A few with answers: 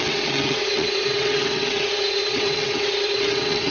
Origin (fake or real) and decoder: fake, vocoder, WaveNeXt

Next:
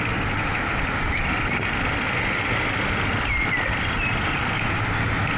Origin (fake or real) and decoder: real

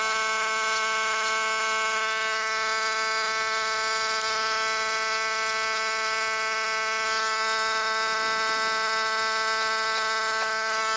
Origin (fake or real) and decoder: real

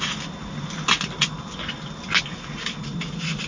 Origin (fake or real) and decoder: real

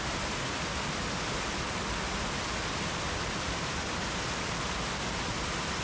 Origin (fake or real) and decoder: real